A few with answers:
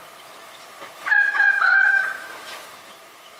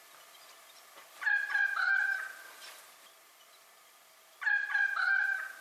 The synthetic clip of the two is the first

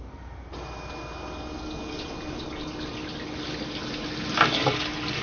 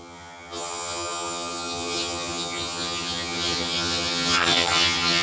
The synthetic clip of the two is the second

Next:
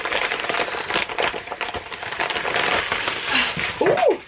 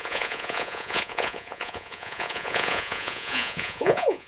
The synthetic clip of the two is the second